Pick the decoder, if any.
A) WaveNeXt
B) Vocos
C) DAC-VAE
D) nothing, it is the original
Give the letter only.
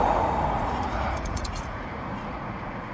B